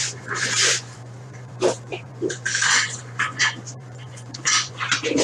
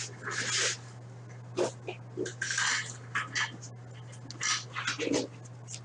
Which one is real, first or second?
second